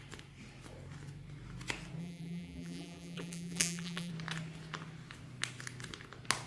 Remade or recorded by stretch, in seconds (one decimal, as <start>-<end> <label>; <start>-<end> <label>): 0.0-2.0 recorded; 2.0-4.1 remade; 4.1-6.5 recorded